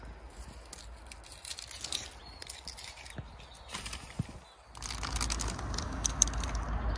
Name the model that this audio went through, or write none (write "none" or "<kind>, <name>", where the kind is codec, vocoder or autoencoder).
none